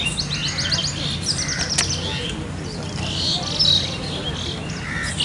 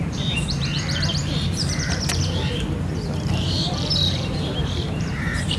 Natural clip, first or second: first